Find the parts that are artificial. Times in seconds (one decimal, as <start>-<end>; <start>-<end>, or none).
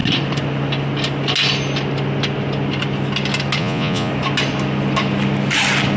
3.6-4.1